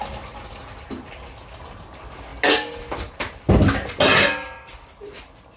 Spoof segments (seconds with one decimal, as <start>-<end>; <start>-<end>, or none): none